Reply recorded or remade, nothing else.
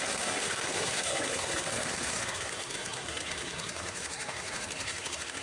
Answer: remade